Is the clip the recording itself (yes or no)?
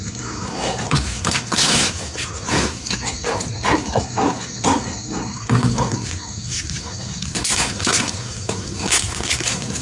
no